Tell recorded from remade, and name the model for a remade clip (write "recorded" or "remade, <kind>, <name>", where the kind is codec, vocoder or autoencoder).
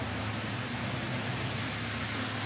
recorded